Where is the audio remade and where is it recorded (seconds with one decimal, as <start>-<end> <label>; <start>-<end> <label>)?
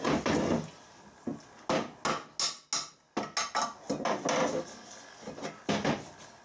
0.0-6.4 recorded